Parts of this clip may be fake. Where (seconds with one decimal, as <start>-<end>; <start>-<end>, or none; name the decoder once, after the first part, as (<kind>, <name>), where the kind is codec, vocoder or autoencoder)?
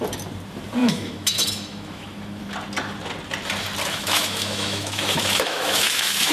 0.8-2.4 (autoencoder, DAC-VAE); 3.9-6.3